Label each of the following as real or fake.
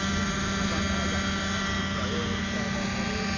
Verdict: real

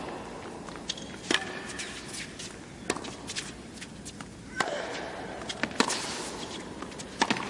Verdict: real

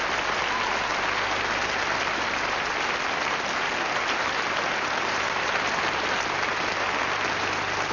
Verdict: real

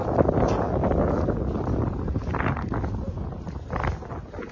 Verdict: real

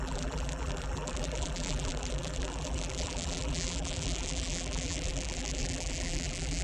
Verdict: fake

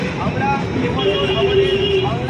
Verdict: real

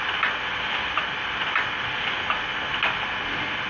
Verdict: real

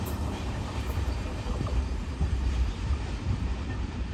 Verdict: fake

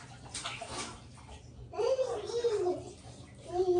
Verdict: real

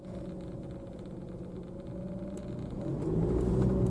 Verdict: real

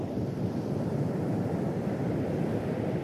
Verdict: fake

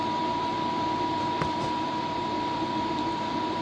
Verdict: fake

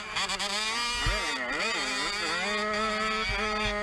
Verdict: real